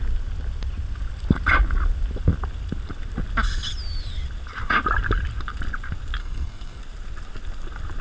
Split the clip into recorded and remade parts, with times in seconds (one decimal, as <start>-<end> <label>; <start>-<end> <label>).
0.0-6.2 recorded; 6.2-6.8 remade; 6.8-8.0 recorded